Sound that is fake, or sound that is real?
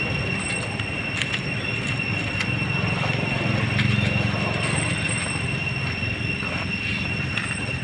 real